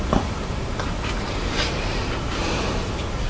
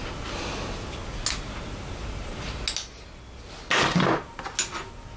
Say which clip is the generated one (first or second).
first